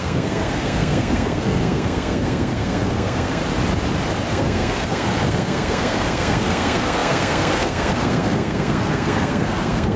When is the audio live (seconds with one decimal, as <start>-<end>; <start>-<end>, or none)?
3.4-4.3